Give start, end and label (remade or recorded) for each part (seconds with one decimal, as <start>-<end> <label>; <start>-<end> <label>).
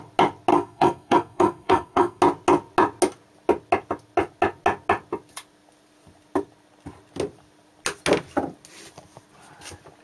0.0-0.5 recorded; 0.5-2.2 remade; 2.2-10.0 recorded